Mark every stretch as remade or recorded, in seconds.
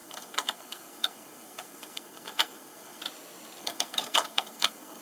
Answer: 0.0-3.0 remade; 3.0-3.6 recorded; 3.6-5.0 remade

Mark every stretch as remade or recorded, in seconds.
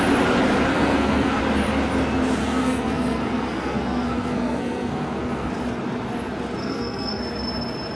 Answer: 0.0-0.7 recorded; 0.7-1.4 remade; 1.4-2.4 recorded; 2.4-5.5 remade; 5.5-6.6 recorded; 6.6-7.2 remade; 7.2-8.0 recorded